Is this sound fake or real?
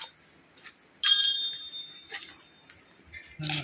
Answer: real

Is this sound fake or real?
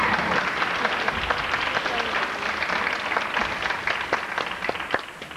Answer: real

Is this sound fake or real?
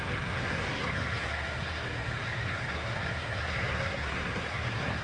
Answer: fake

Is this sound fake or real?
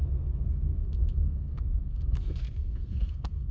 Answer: fake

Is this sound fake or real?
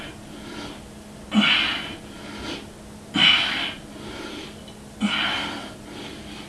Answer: real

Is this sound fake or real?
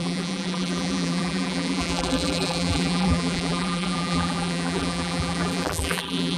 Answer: fake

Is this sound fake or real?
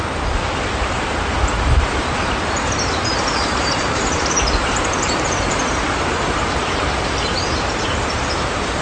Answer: fake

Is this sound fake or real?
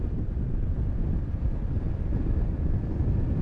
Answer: real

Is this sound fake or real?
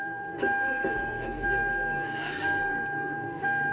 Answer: fake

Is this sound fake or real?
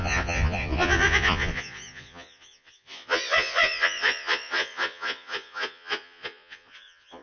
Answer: fake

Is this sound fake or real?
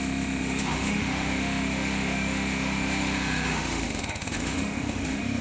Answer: fake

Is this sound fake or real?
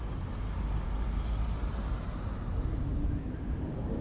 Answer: fake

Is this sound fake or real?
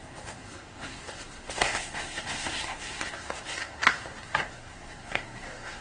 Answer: fake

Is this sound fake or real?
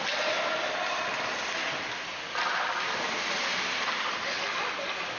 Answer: real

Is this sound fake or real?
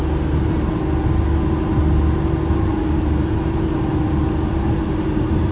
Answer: real